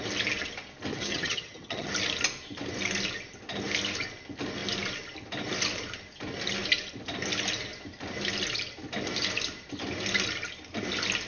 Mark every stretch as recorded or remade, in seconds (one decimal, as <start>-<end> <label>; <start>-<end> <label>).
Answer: 0.0-0.9 recorded; 0.9-1.9 remade; 1.9-11.3 recorded